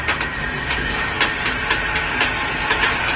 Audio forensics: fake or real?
real